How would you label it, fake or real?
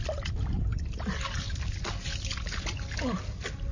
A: real